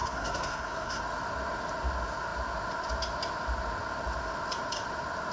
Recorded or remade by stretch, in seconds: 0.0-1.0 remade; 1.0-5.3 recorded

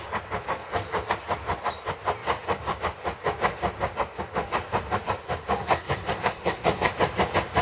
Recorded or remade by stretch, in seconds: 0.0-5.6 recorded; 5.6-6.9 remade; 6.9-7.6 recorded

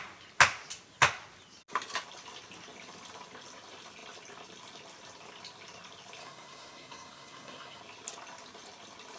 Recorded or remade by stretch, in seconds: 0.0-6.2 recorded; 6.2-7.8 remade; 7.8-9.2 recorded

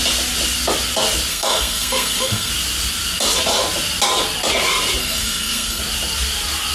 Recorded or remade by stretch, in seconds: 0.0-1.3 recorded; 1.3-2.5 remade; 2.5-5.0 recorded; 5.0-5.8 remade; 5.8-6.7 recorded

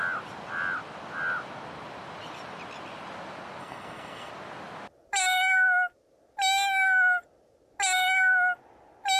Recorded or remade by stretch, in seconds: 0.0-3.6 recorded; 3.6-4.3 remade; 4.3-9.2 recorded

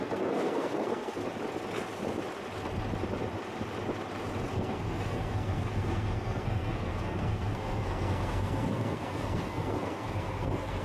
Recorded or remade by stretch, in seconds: 0.0-1.2 remade; 1.2-4.5 recorded; 4.5-10.8 remade